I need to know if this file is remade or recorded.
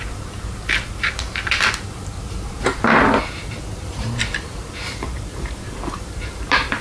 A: remade